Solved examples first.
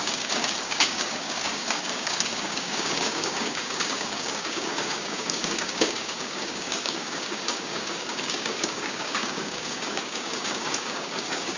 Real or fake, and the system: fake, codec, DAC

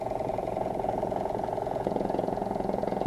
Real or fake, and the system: fake, vocoder, Vocos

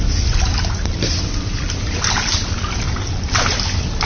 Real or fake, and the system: real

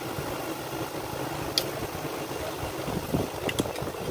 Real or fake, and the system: real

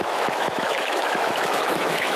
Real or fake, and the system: fake, autoencoder, DAC-VAE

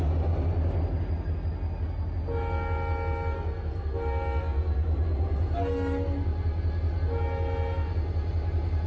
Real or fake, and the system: real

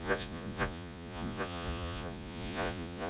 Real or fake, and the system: fake, vocoder, Vocos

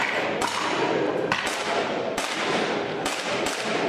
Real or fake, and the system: real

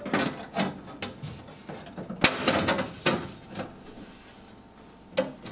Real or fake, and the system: real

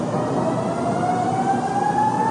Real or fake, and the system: real